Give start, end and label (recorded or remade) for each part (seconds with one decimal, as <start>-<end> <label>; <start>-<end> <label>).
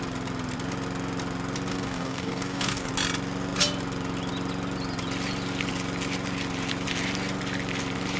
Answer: 0.0-1.7 recorded; 1.7-2.9 remade; 2.9-8.2 recorded